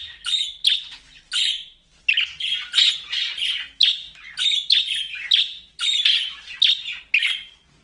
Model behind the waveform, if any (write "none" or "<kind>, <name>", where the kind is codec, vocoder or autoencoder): none